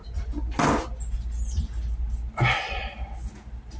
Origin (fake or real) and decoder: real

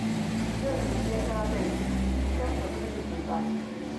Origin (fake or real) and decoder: real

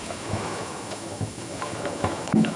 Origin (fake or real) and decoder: fake, autoencoder, DAC-VAE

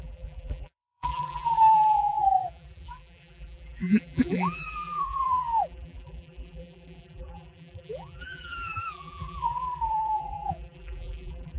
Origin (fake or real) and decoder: fake, vocoder, BigVGAN v2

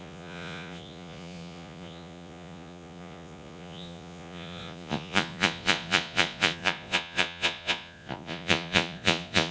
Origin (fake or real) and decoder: fake, vocoder, Vocos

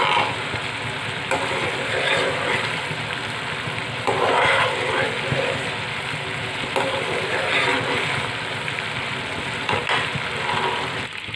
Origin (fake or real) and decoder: real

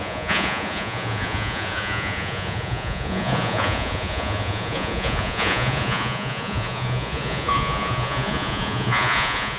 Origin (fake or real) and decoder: fake, vocoder, Vocos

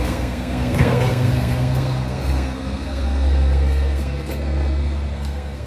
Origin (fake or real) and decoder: fake, codec, SNAC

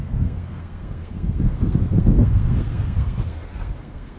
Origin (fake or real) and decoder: fake, codec, SNAC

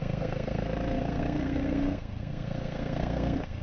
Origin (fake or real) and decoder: fake, codec, SNAC